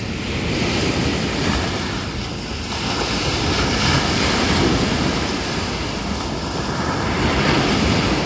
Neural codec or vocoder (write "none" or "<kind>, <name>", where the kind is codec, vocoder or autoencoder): none